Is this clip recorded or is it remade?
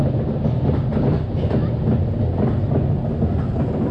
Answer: recorded